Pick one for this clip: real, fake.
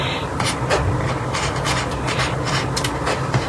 real